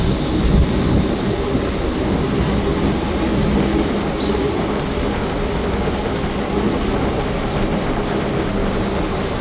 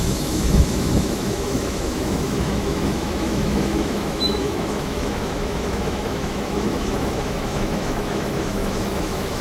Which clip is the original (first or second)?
first